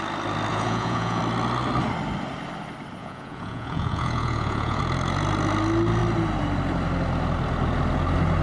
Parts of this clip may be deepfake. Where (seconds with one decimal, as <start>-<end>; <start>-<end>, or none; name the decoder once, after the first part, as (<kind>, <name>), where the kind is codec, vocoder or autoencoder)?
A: 0.5-1.2 (vocoder, Vocos); 3.0-4.8